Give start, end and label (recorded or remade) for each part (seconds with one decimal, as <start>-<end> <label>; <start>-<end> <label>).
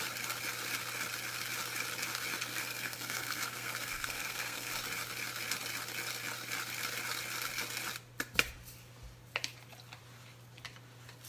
0.0-2.5 recorded; 2.5-4.7 remade; 4.7-11.3 recorded